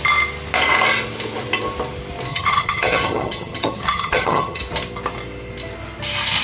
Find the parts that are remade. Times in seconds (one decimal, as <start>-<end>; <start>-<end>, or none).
2.3-4.6